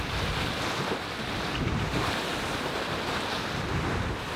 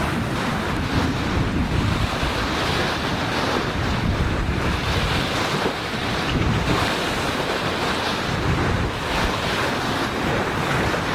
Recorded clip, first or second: first